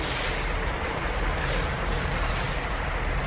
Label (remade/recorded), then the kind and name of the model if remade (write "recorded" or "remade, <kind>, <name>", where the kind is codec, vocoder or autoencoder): recorded